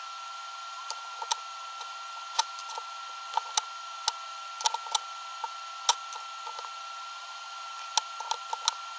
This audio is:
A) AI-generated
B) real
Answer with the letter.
B